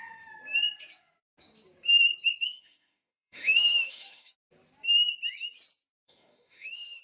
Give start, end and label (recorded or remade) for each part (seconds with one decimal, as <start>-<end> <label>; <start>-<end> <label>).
0.0-2.5 recorded; 2.5-4.3 remade; 4.3-6.0 recorded; 6.0-7.0 remade